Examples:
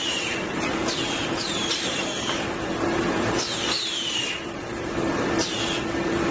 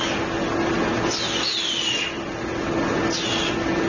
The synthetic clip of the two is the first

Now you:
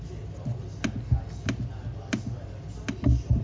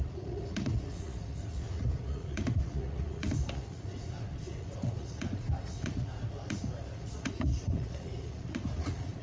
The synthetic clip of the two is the second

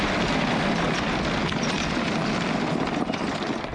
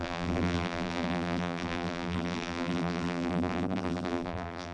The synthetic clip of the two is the second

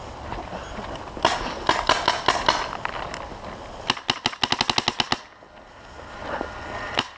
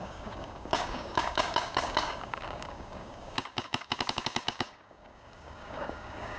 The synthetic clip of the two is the second